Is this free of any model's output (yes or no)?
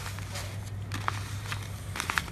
yes